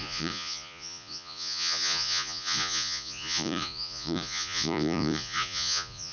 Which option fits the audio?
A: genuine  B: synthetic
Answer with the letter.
B